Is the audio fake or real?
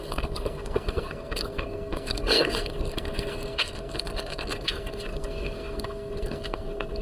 fake